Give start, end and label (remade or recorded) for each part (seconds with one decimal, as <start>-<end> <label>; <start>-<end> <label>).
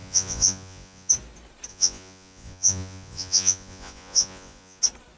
0.0-1.1 remade; 1.1-1.7 recorded; 1.7-4.8 remade; 4.8-5.2 recorded